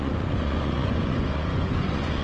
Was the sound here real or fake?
fake